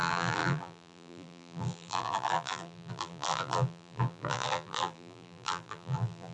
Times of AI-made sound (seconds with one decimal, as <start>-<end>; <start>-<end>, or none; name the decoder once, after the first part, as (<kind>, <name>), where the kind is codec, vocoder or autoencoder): 0.0-6.3 (vocoder, BigVGAN v2)